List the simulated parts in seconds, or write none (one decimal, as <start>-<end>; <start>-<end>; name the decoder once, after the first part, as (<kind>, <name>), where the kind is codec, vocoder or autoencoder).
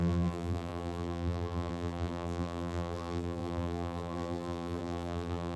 0.0-5.6 (vocoder, BigVGAN v2)